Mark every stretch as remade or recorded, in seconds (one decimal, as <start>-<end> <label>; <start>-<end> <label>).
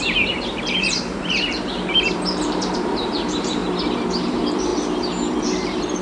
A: 0.0-3.6 remade; 3.6-4.2 recorded; 4.2-4.7 remade; 4.7-5.4 recorded; 5.4-6.0 remade